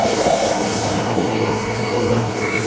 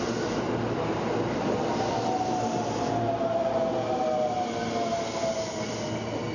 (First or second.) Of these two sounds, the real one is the second